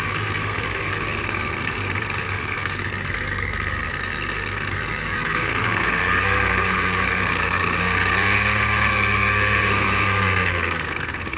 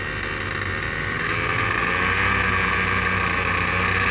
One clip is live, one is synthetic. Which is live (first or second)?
second